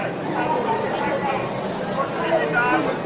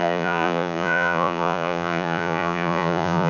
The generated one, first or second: second